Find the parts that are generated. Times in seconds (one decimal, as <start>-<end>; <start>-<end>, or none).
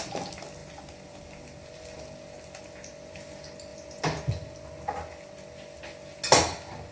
none